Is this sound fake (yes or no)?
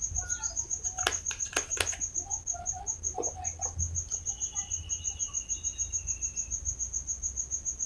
no